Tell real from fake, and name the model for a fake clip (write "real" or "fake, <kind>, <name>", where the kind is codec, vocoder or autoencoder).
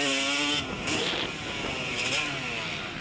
real